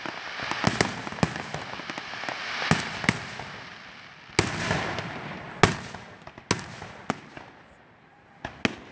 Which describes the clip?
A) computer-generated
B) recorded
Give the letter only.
B